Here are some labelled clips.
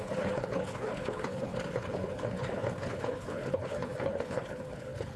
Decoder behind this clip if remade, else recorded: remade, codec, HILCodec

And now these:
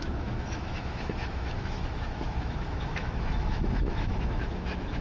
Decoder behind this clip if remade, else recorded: remade, autoencoder, DAC-VAE